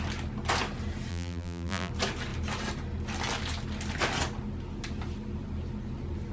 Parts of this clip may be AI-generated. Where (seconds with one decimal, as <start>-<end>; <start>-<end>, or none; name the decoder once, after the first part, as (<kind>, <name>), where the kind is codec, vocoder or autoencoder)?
1.1-1.9 (vocoder, BigVGAN v2)